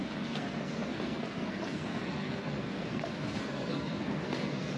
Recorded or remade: remade